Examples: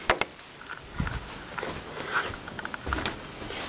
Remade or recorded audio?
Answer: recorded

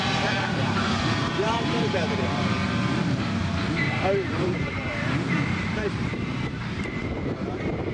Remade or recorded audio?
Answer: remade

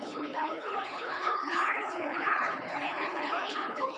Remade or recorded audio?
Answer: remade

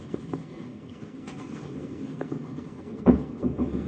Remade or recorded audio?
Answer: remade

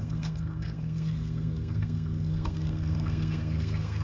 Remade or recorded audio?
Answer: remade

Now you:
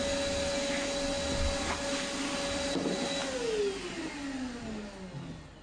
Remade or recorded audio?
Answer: recorded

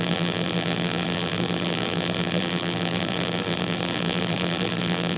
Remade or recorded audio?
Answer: remade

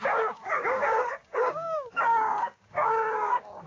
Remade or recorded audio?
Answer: remade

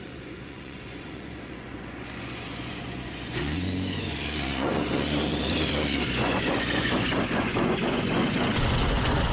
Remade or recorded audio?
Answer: remade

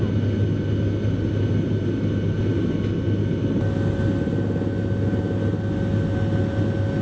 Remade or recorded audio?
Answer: recorded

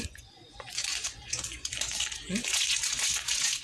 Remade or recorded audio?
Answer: remade